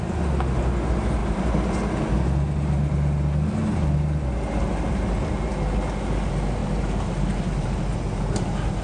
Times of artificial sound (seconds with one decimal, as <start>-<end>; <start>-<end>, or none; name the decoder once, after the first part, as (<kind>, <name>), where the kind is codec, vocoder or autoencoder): 6.6-7.8 (vocoder, BigVGAN v2)